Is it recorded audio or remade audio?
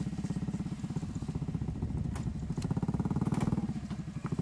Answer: recorded